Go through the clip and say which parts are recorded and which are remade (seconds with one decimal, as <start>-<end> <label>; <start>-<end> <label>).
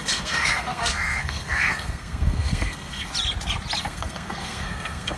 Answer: 0.0-3.1 remade; 3.1-3.8 recorded; 3.8-5.2 remade